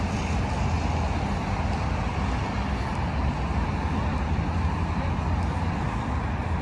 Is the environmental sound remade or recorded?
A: recorded